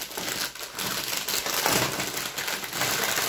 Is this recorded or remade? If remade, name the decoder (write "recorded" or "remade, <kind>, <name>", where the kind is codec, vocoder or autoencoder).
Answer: recorded